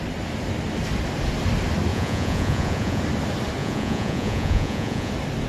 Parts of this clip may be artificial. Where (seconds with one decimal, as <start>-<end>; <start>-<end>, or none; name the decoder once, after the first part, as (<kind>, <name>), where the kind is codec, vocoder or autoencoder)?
1.9-3.0 (vocoder, Vocos); 3.6-5.1